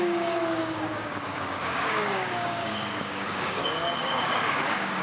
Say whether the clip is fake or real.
fake